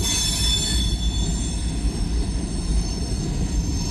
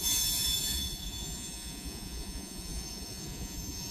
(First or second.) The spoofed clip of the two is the second